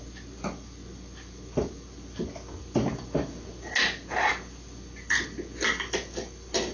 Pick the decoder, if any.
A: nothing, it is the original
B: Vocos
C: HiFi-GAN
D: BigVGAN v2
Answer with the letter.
A